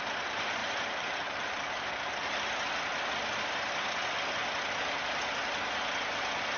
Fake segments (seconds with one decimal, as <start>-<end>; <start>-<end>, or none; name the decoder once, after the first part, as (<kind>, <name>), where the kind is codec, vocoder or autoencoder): none